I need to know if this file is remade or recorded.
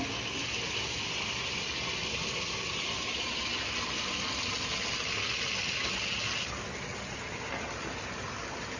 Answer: recorded